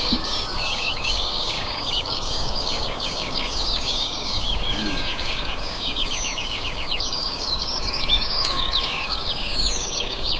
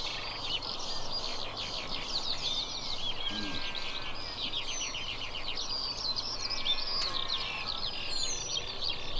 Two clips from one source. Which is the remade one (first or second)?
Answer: first